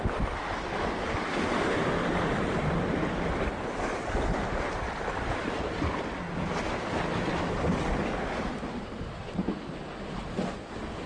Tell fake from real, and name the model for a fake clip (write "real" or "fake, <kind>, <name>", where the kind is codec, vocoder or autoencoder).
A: real